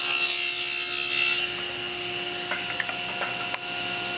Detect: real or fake real